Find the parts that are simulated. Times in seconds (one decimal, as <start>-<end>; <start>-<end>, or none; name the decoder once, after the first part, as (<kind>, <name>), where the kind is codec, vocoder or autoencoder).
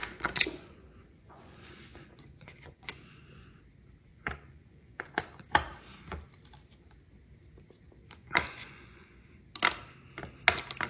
0.0-3.6 (vocoder, Vocos); 4.1-5.2; 8.2-9.3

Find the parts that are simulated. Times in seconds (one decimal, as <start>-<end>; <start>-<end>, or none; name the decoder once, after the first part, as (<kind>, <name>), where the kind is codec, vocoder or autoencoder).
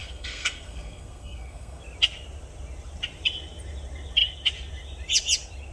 0.0-1.8 (codec, SNAC)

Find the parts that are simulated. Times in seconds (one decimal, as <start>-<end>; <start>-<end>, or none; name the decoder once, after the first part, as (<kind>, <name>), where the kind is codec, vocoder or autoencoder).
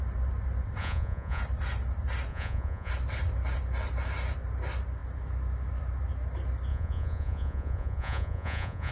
0.8-1.4 (vocoder, Vocos); 2.3-2.9; 6.7-8.9